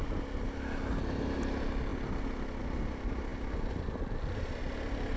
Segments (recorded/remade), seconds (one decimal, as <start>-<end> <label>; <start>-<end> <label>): 0.0-5.2 recorded